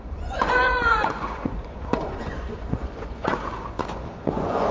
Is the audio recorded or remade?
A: remade